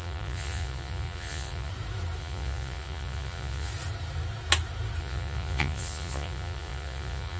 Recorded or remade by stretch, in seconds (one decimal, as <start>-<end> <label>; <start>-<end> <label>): 0.0-1.7 remade; 1.7-2.2 recorded; 2.2-3.7 remade; 3.7-5.0 recorded; 5.0-7.4 remade